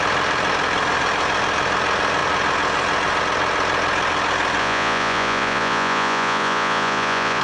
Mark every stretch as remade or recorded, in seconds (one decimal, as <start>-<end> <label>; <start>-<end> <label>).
0.0-4.6 recorded; 4.6-7.4 remade